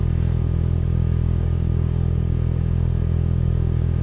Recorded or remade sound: remade